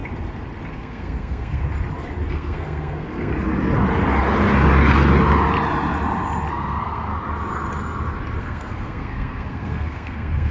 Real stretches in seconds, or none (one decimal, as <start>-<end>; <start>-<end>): 0.0-0.7; 1.6-2.3; 3.3-6.5; 7.1-8.4